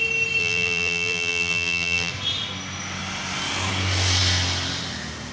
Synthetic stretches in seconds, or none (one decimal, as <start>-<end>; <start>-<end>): 0.4-2.1